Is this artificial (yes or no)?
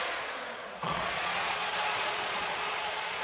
yes